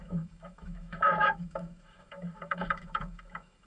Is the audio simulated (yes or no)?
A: yes